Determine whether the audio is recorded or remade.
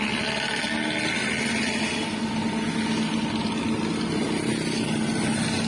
recorded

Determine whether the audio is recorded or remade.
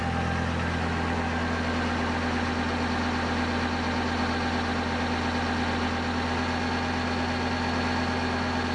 recorded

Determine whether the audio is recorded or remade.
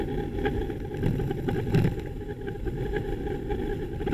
recorded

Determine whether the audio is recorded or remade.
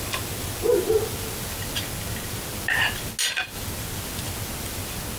recorded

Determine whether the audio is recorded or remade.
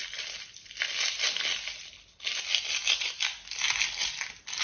recorded